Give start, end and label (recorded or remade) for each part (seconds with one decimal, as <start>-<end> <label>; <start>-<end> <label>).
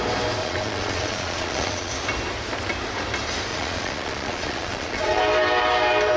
0.0-0.4 recorded; 0.4-1.9 remade; 1.9-3.5 recorded; 3.5-5.2 remade; 5.2-6.2 recorded